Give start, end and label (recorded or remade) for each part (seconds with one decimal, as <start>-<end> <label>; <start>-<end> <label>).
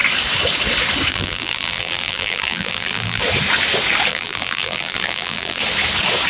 0.0-1.1 recorded; 1.1-3.2 remade; 3.2-4.1 recorded; 4.1-5.6 remade; 5.6-6.3 recorded